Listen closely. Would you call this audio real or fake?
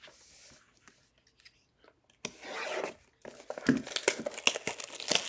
real